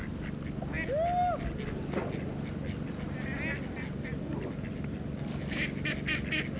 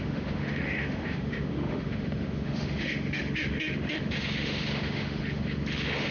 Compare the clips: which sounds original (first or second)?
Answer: first